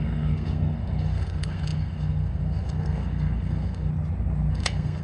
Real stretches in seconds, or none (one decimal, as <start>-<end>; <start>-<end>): 3.9-4.5